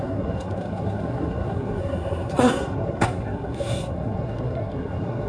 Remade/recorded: remade